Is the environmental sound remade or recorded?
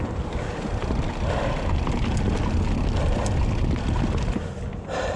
recorded